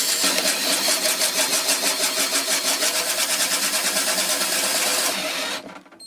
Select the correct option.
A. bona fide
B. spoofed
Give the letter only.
A